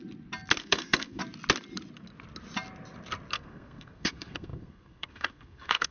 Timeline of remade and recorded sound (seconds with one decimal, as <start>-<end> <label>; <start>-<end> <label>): 0.0-0.6 recorded; 0.6-1.2 remade; 1.2-3.3 recorded; 3.3-5.9 remade